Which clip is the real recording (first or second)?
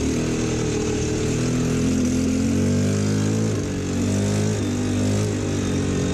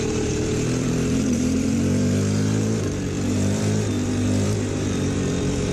first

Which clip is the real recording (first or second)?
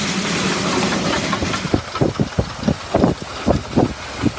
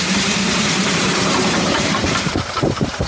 first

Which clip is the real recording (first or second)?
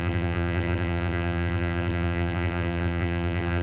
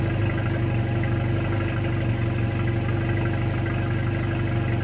second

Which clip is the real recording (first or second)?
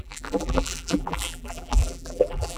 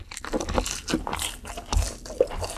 second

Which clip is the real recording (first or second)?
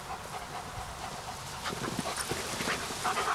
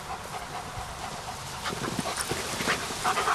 first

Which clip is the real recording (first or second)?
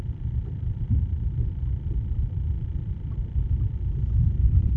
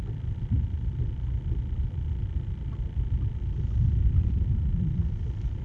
second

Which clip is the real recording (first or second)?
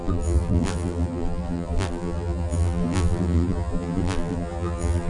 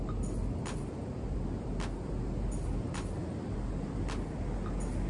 second